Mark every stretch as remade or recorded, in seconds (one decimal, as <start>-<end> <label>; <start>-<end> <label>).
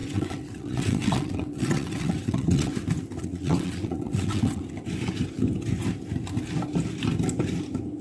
0.0-2.7 remade; 2.7-3.2 recorded; 3.2-4.6 remade; 4.6-8.0 recorded